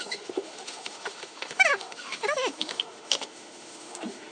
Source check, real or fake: fake